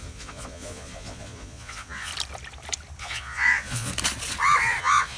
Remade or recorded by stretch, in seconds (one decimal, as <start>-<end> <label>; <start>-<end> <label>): 0.0-2.1 remade; 2.1-3.0 recorded; 3.0-3.9 remade; 3.9-4.8 recorded; 4.8-5.2 remade